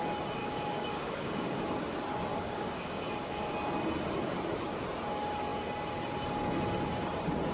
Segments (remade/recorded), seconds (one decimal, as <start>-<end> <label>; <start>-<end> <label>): 0.0-0.4 recorded; 0.4-1.6 remade; 1.6-2.3 recorded; 2.3-3.5 remade; 3.5-7.5 recorded